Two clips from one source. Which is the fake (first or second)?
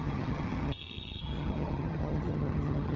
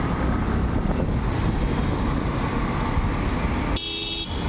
first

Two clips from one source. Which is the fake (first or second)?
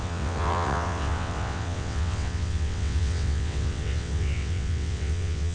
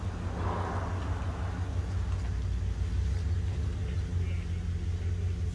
first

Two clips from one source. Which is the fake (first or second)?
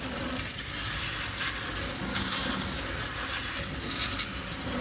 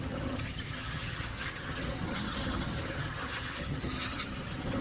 second